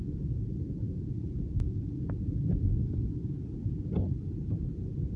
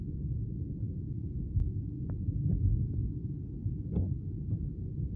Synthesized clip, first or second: first